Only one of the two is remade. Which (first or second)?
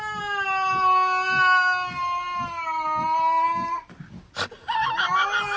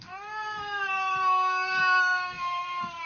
second